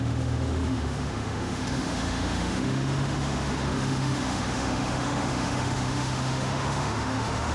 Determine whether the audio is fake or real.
fake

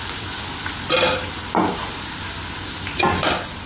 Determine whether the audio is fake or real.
real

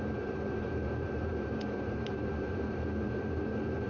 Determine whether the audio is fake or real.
fake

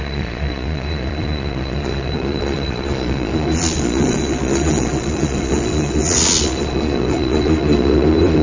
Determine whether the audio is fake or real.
fake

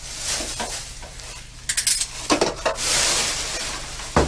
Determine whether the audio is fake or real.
real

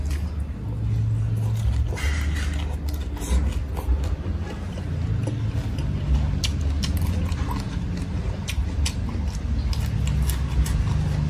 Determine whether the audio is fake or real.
real